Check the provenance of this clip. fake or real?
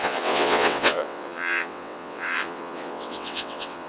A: fake